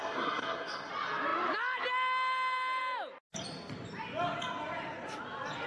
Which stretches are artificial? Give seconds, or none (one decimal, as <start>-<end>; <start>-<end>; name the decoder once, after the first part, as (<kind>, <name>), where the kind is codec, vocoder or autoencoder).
0.0-0.9 (codec, SNAC)